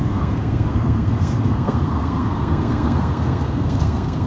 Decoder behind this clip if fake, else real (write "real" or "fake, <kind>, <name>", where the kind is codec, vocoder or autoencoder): fake, codec, SNAC